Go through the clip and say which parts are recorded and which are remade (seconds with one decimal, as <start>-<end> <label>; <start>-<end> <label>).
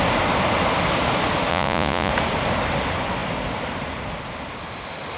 0.0-1.5 recorded; 1.5-2.1 remade; 2.1-5.2 recorded